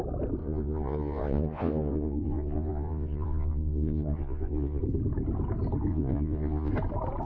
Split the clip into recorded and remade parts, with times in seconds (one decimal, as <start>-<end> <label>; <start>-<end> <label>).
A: 0.0-0.4 recorded; 0.4-4.8 remade; 4.8-5.9 recorded; 5.9-6.7 remade; 6.7-7.3 recorded